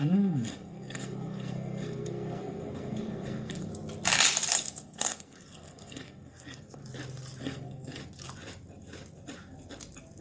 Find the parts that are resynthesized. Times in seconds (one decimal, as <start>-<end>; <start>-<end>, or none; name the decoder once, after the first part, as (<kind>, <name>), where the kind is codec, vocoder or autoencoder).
0.0-3.7 (codec, SNAC); 4.5-6.8; 7.4-8.0